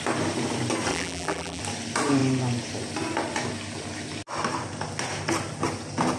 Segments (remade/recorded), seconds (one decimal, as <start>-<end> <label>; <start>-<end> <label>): 0.0-0.9 recorded; 0.9-1.6 remade; 1.6-6.2 recorded